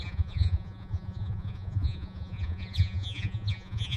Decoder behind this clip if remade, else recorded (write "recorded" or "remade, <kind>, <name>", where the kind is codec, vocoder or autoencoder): remade, vocoder, Vocos